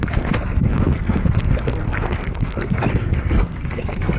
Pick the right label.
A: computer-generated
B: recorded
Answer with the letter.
A